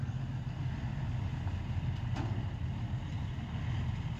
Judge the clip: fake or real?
real